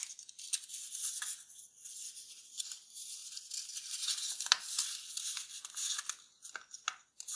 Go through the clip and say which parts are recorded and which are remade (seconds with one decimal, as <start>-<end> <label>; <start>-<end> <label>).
0.0-7.4 recorded